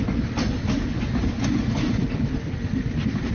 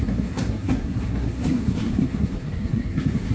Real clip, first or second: first